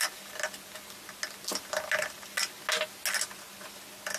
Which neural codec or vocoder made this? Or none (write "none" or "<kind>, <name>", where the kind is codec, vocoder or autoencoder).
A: none